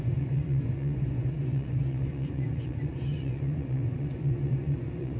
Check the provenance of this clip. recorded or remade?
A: remade